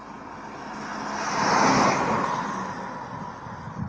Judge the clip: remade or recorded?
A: recorded